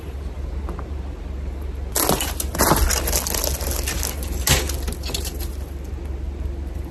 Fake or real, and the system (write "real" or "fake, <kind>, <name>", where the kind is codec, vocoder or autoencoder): real